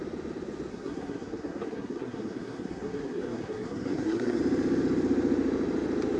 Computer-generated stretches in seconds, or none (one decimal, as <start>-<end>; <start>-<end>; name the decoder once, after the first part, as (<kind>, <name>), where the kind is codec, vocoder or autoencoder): 0.7-4.4 (codec, SNAC)